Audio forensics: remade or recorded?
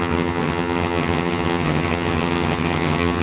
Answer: remade